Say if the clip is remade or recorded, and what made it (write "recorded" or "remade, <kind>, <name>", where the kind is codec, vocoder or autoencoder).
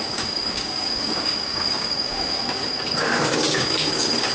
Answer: remade, codec, DAC